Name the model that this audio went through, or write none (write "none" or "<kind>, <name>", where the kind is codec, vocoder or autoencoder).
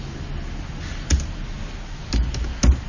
none